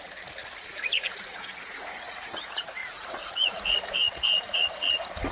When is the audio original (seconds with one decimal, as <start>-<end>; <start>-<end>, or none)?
none